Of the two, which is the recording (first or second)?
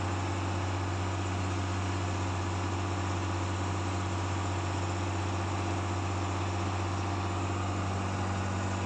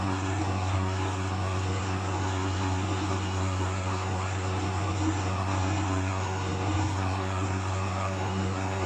first